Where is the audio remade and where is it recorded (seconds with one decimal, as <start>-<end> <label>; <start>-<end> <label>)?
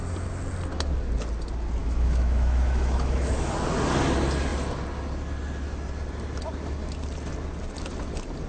0.0-1.8 recorded; 1.8-3.5 remade; 3.5-8.5 recorded